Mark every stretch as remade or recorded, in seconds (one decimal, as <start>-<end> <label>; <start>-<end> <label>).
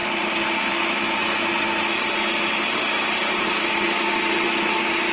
0.0-5.1 recorded